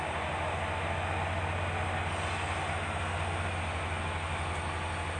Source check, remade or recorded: recorded